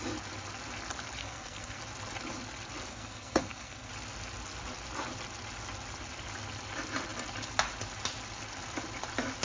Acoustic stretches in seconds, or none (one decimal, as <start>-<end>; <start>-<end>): 0.0-1.2; 1.8-2.9; 3.9-9.4